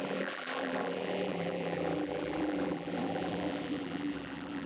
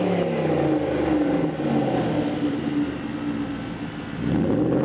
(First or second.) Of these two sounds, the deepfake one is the first